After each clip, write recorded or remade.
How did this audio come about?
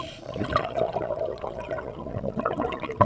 remade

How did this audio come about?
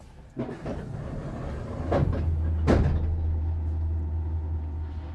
recorded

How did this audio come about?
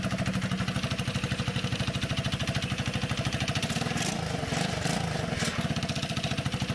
recorded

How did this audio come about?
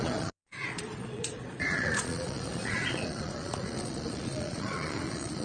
remade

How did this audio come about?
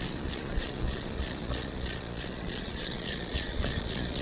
remade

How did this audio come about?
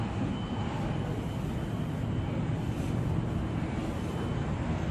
recorded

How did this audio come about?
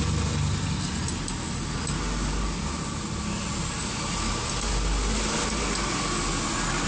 recorded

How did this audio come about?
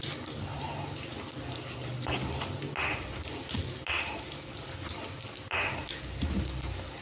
recorded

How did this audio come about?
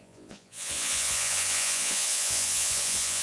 remade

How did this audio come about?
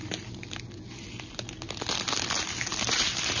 recorded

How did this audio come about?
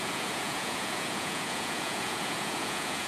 remade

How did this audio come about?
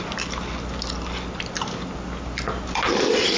recorded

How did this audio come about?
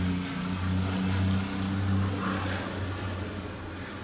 recorded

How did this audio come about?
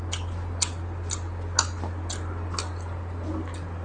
recorded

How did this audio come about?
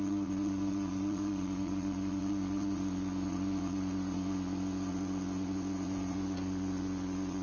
remade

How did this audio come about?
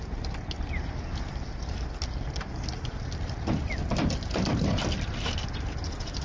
recorded